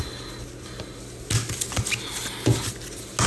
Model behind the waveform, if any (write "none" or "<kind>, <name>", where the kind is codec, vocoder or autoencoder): none